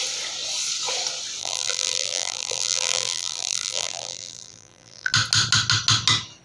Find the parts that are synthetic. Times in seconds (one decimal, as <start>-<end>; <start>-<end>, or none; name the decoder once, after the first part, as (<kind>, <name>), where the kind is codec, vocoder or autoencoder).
1.4-5.1 (vocoder, BigVGAN v2)